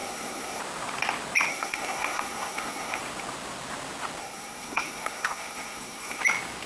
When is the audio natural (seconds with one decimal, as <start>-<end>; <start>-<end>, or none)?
0.6-1.5; 3.0-4.2; 6.2-6.7